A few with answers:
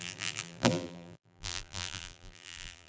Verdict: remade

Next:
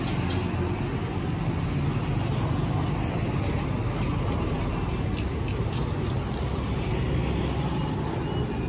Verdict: recorded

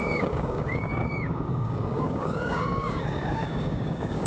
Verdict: remade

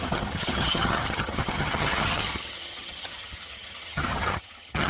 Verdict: remade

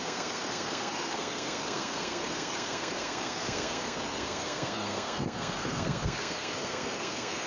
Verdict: remade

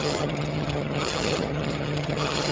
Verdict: remade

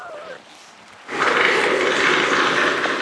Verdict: recorded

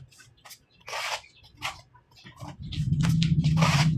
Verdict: recorded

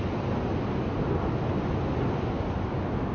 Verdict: recorded